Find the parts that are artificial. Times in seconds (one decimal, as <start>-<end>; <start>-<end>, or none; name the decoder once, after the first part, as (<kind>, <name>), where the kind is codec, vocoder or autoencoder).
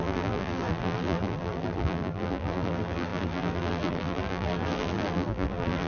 0.0-5.9 (vocoder, BigVGAN v2)